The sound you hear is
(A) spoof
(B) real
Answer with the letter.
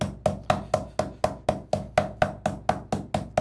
B